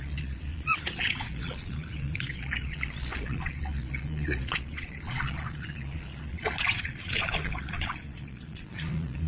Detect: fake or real fake